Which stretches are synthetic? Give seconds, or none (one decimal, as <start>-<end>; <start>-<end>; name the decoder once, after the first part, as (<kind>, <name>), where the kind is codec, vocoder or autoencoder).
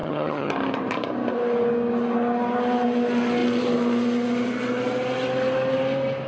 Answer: 0.0-0.5 (vocoder, HiFi-GAN)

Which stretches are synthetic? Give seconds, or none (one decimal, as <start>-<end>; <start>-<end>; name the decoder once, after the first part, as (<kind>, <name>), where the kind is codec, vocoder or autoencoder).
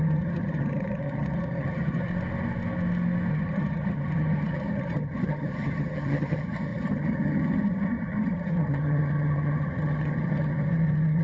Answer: 0.0-2.1 (vocoder, HiFi-GAN); 3.3-11.2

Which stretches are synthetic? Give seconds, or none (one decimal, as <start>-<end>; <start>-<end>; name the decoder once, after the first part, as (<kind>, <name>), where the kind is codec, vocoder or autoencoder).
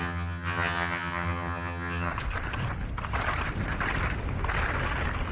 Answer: 0.0-2.1 (vocoder, HiFi-GAN)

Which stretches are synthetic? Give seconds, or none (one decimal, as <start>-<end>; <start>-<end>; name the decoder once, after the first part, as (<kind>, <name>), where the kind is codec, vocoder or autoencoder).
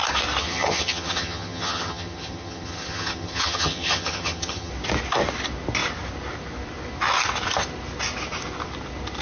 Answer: 0.4-4.7 (vocoder, HiFi-GAN)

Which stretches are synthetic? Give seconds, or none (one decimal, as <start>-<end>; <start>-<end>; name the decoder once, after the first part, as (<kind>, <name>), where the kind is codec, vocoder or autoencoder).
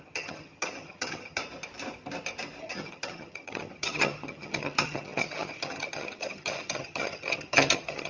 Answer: 0.0-1.4 (vocoder, HiFi-GAN); 2.6-8.1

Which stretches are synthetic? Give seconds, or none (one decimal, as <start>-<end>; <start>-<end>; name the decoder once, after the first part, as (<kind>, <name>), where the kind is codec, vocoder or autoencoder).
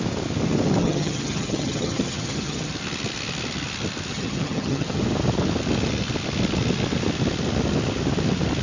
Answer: 0.8-2.7 (vocoder, HiFi-GAN); 4.1-5.0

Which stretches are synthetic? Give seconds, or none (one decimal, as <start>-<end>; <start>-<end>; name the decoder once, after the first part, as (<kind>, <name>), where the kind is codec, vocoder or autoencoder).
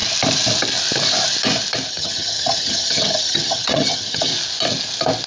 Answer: 1.9-4.3 (vocoder, HiFi-GAN)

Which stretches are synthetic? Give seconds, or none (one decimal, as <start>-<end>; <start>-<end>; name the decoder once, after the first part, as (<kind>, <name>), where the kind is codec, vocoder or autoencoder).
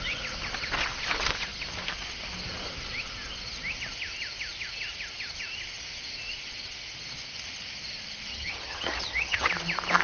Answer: 8.3-9.5 (vocoder, HiFi-GAN)